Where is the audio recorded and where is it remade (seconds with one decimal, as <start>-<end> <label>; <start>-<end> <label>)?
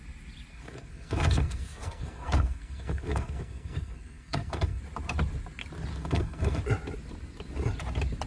0.0-0.5 recorded; 0.5-4.8 remade; 4.8-5.9 recorded; 5.9-6.6 remade; 6.6-8.3 recorded